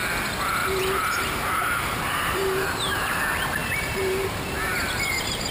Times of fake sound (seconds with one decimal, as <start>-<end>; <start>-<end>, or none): 0.6-3.2; 3.6-5.5